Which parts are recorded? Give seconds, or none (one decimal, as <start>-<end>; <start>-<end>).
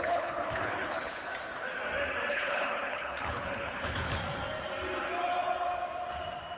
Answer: 1.3-2.3; 4.2-6.6